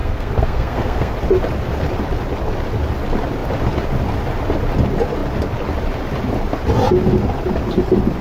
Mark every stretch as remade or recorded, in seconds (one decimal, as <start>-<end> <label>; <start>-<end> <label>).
0.0-1.1 remade; 1.1-8.2 recorded